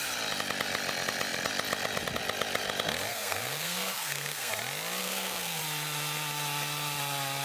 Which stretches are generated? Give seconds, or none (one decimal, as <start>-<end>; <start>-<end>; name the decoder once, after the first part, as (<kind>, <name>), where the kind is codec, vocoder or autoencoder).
3.1-4.5 (codec, SNAC); 5.0-5.6